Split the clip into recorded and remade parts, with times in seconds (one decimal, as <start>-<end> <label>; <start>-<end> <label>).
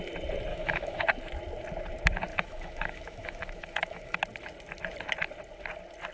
0.0-0.5 recorded; 0.5-1.0 remade; 1.0-2.3 recorded; 2.3-4.2 remade; 4.2-6.1 recorded